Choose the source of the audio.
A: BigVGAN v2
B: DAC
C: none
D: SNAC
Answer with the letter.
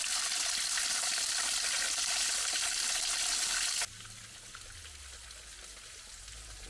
C